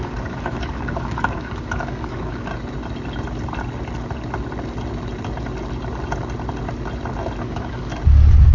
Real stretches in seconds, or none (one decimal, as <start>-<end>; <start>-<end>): 2.5-7.4; 7.9-8.5